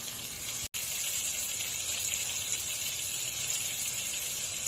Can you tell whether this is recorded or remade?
recorded